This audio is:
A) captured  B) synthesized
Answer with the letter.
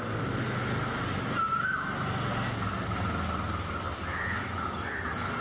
A